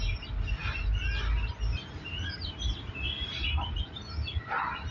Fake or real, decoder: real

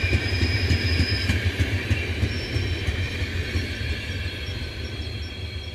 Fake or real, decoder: fake, vocoder, BigVGAN v2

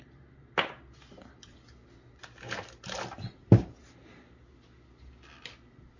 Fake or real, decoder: real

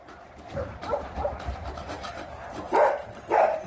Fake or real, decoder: fake, vocoder, BigVGAN v2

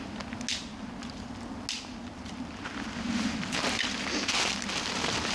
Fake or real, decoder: real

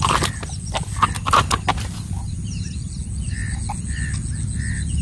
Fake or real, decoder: real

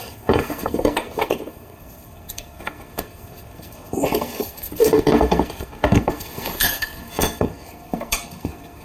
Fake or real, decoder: fake, codec, SNAC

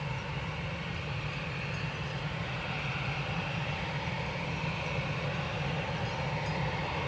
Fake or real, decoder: real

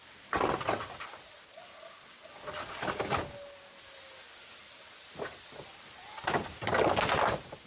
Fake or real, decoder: real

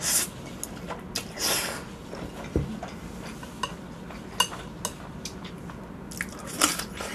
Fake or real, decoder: real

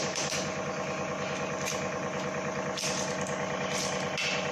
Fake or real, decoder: real